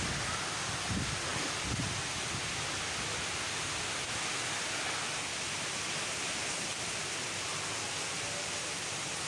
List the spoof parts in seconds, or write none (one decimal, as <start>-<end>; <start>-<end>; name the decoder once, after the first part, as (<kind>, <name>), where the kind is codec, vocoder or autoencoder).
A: none